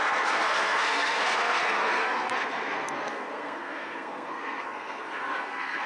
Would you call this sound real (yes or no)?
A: no